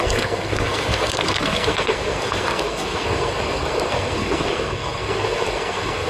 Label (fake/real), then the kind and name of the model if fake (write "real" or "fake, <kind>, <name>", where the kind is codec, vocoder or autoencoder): fake, codec, SNAC